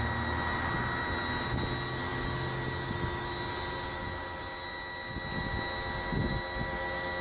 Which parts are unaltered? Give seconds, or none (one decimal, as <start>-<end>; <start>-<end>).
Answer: 0.0-7.2